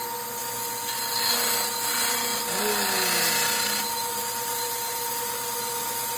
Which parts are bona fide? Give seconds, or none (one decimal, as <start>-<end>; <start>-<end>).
0.0-6.2